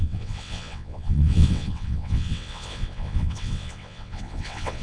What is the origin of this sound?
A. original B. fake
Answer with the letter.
B